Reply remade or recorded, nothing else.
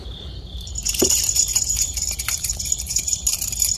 remade